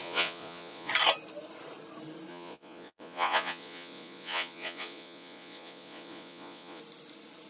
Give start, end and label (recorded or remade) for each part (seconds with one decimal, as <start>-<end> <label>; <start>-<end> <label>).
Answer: 0.0-0.9 remade; 0.9-2.3 recorded; 2.3-6.8 remade; 6.8-7.5 recorded

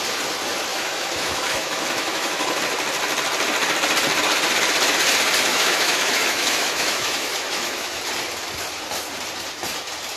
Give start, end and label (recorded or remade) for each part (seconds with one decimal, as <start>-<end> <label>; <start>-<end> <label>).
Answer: 0.0-0.7 recorded; 0.7-2.6 remade; 2.6-5.5 recorded; 5.5-8.0 remade; 8.0-10.2 recorded